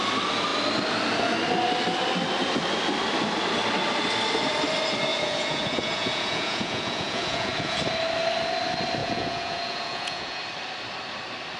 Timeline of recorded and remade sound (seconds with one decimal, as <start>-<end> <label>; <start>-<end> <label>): 0.0-5.1 recorded; 5.1-7.8 remade; 7.8-9.0 recorded; 9.0-10.4 remade; 10.4-11.6 recorded